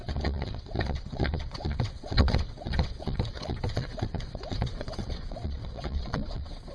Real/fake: fake